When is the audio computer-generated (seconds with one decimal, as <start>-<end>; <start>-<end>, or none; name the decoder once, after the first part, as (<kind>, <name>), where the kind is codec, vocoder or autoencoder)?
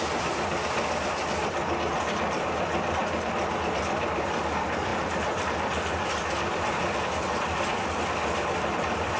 0.0-3.0 (vocoder, BigVGAN v2); 3.8-9.2